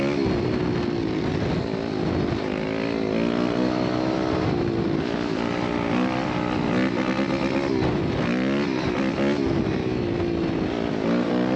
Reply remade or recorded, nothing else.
recorded